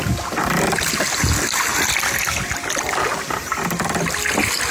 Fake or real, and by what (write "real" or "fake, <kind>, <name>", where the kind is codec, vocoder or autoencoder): real